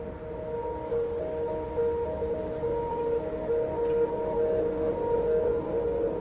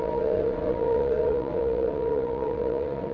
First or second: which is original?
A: first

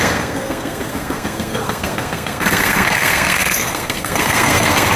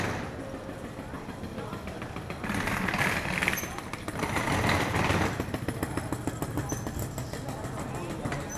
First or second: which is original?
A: second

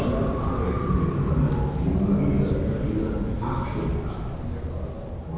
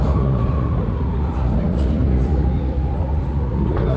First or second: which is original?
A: first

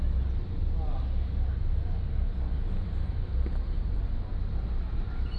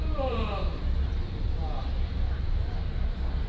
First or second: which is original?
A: first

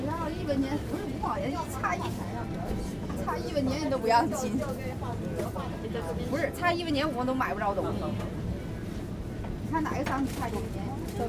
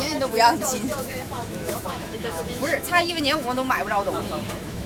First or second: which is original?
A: first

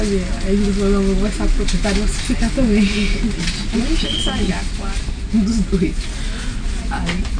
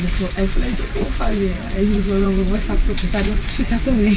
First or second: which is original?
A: first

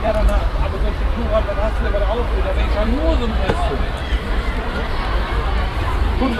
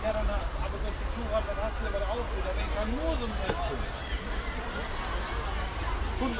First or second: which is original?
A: second